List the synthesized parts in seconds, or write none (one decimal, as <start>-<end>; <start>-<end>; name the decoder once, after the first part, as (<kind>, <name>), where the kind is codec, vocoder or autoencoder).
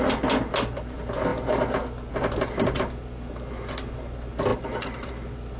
none